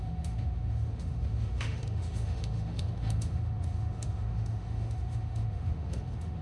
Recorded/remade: remade